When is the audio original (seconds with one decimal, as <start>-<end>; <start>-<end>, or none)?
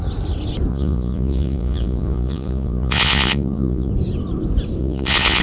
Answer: 0.0-0.7; 3.9-4.8